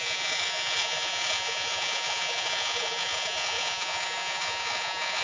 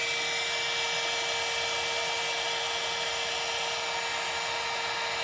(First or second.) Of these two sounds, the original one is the second